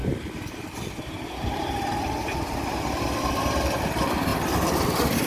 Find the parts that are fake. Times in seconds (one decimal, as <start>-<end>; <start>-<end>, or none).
0.0-5.3